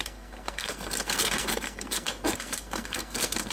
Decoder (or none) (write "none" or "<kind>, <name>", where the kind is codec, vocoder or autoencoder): codec, SNAC